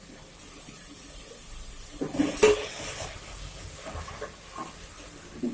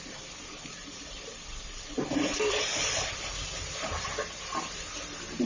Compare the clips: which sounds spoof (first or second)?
second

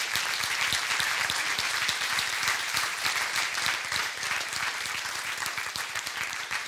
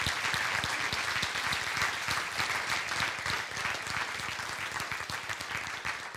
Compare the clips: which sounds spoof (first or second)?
first